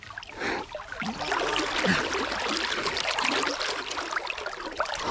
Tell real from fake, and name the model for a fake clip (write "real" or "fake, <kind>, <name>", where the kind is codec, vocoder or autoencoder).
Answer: real